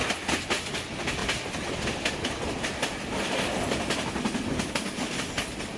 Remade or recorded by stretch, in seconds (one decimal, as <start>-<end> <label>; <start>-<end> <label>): 0.0-5.8 recorded